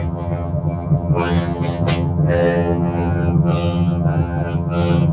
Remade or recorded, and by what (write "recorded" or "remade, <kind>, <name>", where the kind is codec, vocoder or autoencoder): remade, vocoder, HiFi-GAN